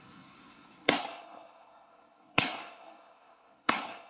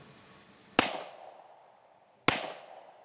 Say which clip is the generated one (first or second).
first